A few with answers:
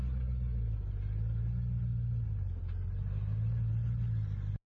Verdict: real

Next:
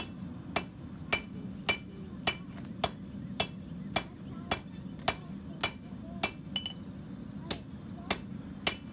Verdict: real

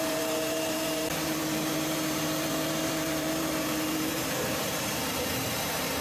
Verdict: fake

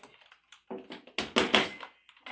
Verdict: real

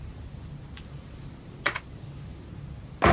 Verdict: real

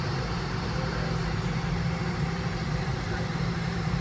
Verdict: fake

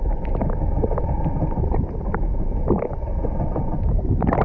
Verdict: real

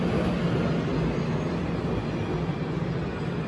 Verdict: real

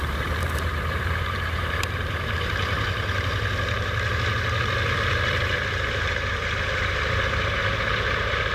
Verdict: fake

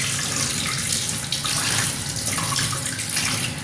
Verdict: real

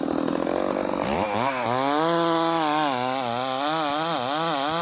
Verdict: real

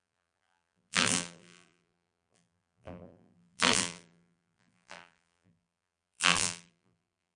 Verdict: fake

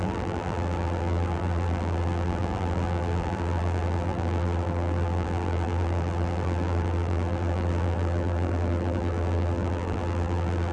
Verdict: fake